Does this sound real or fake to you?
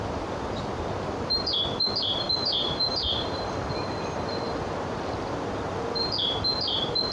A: fake